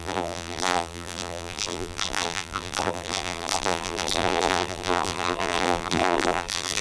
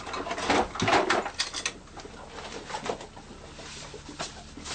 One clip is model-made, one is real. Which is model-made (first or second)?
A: first